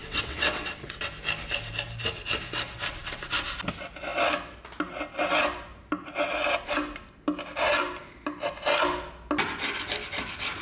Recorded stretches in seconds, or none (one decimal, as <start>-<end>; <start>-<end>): 1.0-10.6